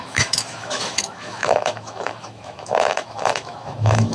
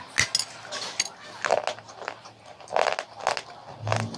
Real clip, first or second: second